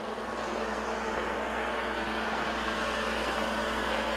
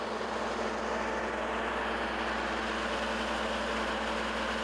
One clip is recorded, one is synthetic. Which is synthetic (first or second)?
first